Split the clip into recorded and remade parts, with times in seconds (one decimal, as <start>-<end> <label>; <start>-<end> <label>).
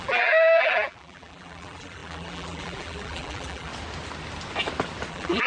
0.0-3.7 remade; 3.7-5.1 recorded; 5.1-5.5 remade